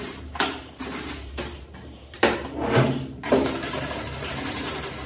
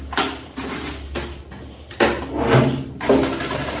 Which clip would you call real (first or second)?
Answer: second